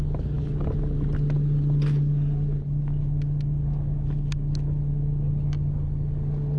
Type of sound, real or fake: real